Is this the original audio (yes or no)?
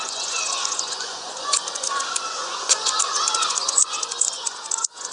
no